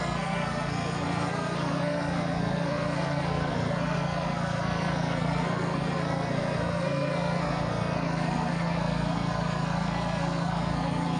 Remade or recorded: remade